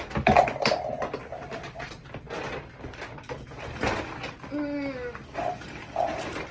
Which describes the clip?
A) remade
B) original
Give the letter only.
B